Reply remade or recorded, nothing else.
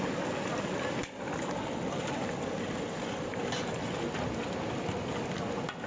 recorded